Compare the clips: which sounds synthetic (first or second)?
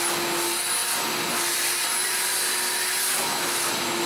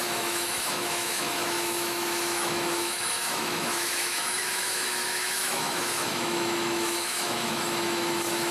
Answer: second